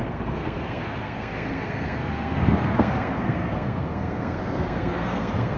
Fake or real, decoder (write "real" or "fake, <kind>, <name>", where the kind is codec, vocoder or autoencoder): fake, codec, SNAC